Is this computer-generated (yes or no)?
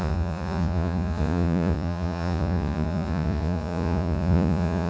yes